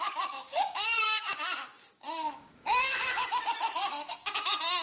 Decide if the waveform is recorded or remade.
remade